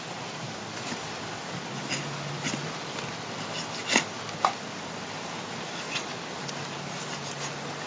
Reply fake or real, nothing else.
real